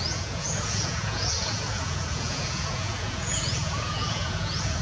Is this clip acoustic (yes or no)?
no